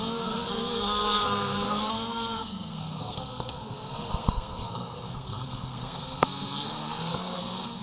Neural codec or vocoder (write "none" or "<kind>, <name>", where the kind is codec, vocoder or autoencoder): codec, SNAC